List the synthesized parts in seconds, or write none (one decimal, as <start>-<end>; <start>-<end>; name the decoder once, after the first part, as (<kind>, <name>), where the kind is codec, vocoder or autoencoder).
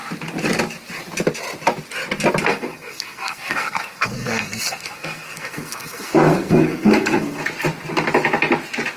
2.4-7.4 (codec, SNAC)